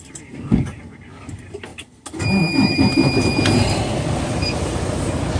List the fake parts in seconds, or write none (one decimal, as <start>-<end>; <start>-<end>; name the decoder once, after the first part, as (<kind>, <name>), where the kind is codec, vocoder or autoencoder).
1.7-4.2 (vocoder, BigVGAN v2)